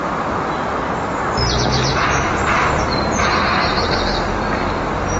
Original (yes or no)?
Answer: yes